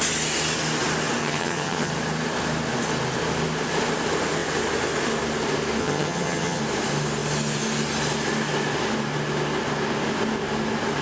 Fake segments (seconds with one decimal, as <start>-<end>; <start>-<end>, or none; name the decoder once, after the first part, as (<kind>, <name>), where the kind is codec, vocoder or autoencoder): 1.2-1.9 (vocoder, HiFi-GAN); 5.8-6.6